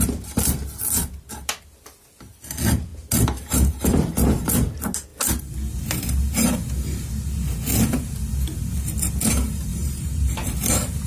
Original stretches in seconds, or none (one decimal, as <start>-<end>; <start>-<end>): 0.0-9.7; 10.3-11.1